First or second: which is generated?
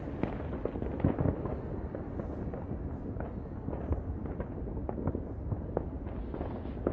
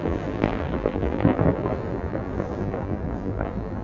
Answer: second